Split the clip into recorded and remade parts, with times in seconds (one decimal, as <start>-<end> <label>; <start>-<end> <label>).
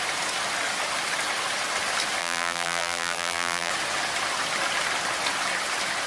0.0-2.2 recorded; 2.2-3.7 remade; 3.7-6.1 recorded